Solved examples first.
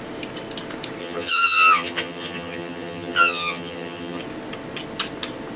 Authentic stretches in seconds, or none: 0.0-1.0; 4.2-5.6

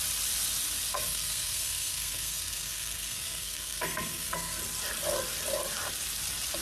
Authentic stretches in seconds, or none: 0.0-0.9; 4.6-6.6

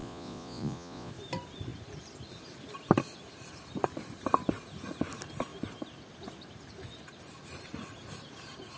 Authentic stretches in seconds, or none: 1.1-8.8

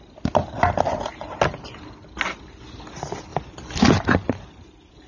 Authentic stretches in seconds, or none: 0.0-5.1

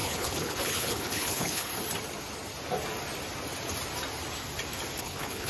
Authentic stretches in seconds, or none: 1.7-5.0